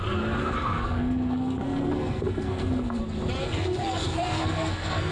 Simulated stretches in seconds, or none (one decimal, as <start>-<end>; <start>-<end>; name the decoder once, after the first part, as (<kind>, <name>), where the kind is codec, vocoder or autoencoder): 0.4-3.0 (codec, SNAC); 3.4-5.1